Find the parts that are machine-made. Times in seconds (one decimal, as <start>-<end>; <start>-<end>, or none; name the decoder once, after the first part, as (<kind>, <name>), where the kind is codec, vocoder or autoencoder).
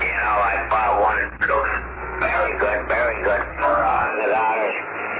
1.2-2.5 (codec, SNAC); 3.5-4.2